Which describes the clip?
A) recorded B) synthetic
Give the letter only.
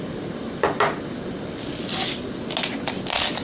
A